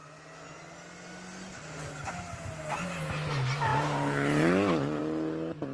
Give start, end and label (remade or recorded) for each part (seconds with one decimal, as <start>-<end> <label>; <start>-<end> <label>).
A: 0.0-5.7 recorded